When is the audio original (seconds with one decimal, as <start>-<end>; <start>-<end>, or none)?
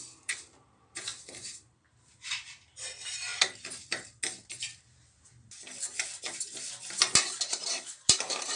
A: 3.3-7.5